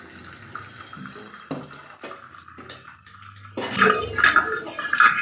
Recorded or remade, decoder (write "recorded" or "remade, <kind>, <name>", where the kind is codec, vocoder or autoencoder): recorded